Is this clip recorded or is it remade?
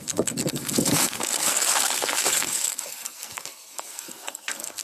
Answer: remade